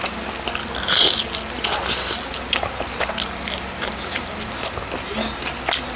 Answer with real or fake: real